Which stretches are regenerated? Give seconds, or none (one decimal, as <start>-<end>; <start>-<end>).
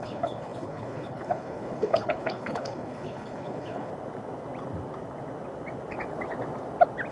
0.0-3.9